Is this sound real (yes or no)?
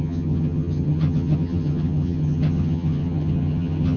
no